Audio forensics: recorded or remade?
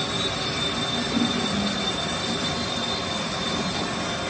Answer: recorded